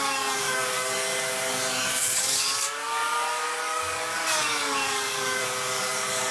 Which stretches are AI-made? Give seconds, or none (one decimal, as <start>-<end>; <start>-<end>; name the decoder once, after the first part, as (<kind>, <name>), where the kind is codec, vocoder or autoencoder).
0.0-6.3 (codec, DAC)